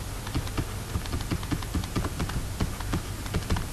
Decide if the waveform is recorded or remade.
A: recorded